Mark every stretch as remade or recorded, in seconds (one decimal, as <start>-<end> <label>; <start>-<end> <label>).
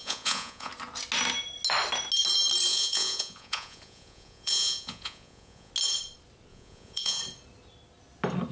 0.0-0.7 remade; 0.7-2.7 recorded; 2.7-5.7 remade; 5.7-6.5 recorded; 6.5-7.2 remade; 7.2-8.5 recorded